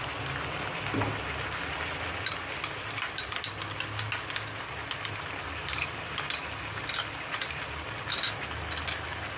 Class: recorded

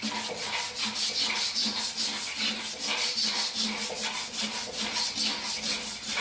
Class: recorded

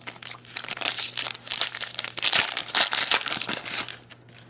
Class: recorded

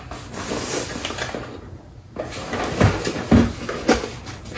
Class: recorded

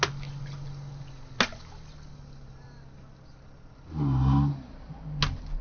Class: recorded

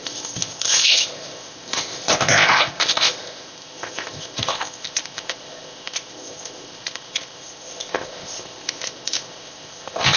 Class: remade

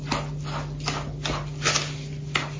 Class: recorded